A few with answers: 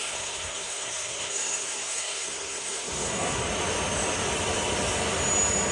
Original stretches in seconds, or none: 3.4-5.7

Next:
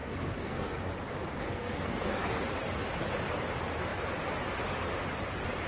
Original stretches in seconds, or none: 0.8-1.4; 2.4-5.7

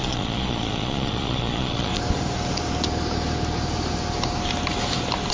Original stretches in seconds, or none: 1.9-5.3

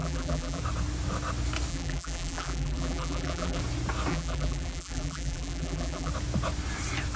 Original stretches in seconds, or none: 0.6-1.7; 3.6-4.1; 6.1-7.2

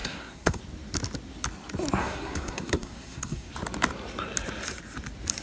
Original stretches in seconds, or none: 0.6-2.0; 3.5-5.4

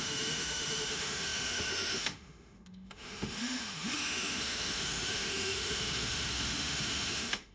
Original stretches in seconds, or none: none

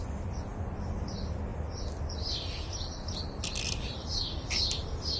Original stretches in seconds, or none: none